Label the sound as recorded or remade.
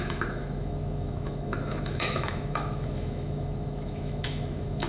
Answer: remade